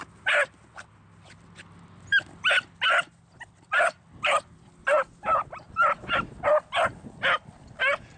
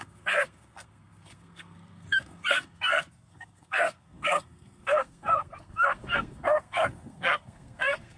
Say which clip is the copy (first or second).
second